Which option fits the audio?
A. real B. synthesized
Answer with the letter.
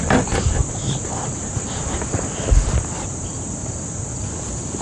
A